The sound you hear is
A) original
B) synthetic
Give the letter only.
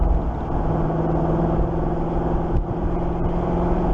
A